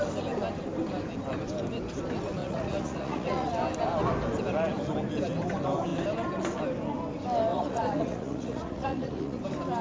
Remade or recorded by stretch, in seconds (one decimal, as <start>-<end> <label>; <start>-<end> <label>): 0.0-2.4 recorded; 2.4-3.5 remade; 3.5-7.5 recorded; 7.5-9.4 remade; 9.4-9.8 recorded